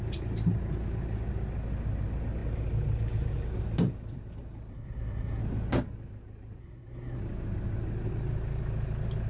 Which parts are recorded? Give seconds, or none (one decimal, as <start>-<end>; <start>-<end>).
0.0-4.7; 5.4-6.6; 7.2-9.3

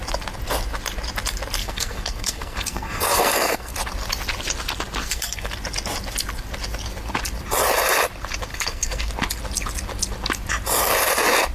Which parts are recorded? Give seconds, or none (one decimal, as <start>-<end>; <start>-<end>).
0.0-1.6; 3.7-5.0; 5.5-8.5; 9.1-11.5

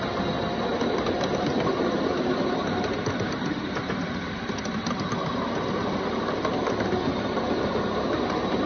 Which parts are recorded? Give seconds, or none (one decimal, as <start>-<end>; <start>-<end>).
0.0-8.7

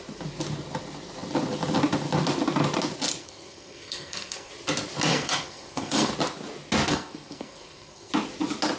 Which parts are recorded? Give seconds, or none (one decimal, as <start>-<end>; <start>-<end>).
0.0-3.2; 4.5-5.1; 6.1-6.9; 8.1-8.8